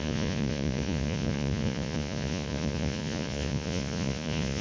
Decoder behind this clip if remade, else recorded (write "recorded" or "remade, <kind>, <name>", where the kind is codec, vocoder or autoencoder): remade, vocoder, Vocos